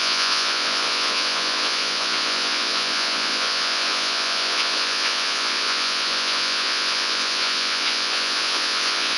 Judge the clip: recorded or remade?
remade